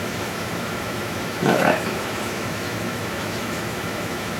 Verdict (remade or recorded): remade